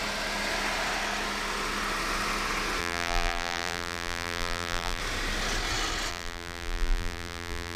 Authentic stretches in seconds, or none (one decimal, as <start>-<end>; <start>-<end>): 0.0-2.8; 5.0-6.1